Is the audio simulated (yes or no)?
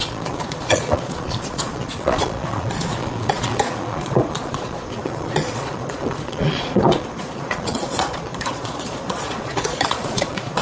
yes